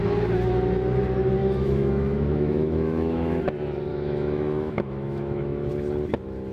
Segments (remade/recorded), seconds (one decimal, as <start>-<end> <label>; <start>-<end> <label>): 0.0-1.4 recorded; 1.4-3.3 remade; 3.3-3.9 recorded; 3.9-5.7 remade; 5.7-6.5 recorded